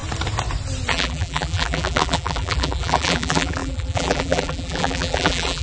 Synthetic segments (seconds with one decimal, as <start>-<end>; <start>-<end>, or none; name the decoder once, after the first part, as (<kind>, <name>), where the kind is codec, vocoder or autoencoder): 0.9-5.6 (vocoder, BigVGAN v2)